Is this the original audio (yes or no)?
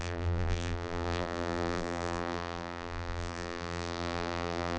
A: no